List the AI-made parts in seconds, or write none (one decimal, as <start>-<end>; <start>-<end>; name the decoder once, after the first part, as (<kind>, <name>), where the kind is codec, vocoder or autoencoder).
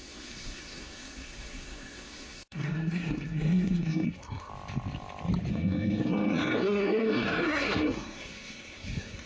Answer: 0.0-4.5 (codec, SNAC); 5.5-9.3